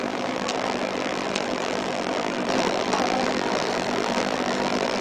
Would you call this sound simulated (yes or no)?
yes